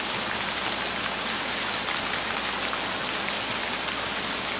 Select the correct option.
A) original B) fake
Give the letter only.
A